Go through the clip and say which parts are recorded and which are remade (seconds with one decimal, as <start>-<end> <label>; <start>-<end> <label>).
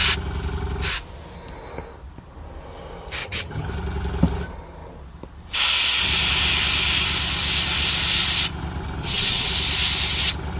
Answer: 0.0-3.2 recorded; 3.2-3.7 remade; 3.7-9.0 recorded; 9.0-9.5 remade; 9.5-10.6 recorded